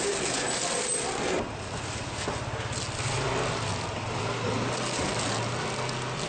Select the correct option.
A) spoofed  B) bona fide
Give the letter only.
B